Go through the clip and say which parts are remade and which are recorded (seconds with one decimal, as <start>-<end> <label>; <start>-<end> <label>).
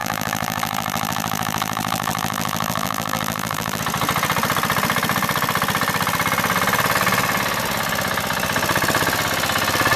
0.0-3.8 remade; 3.8-10.0 recorded